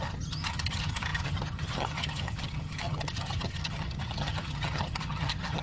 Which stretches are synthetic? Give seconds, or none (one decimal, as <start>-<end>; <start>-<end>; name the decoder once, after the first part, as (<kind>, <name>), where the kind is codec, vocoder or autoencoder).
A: 0.0-5.6 (vocoder, HiFi-GAN)